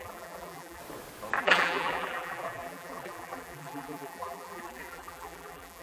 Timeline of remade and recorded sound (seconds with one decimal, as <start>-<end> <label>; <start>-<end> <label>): 0.0-0.8 remade; 0.8-1.4 recorded; 1.4-5.8 remade